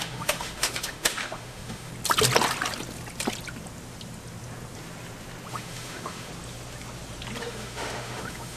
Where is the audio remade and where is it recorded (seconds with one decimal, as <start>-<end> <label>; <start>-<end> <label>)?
0.0-1.9 remade; 1.9-5.5 recorded; 5.5-6.3 remade; 6.3-7.4 recorded; 7.4-8.6 remade